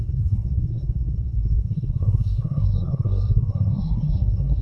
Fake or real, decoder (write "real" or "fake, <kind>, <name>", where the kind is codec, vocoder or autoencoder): fake, codec, SNAC